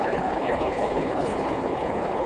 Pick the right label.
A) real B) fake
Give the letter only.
B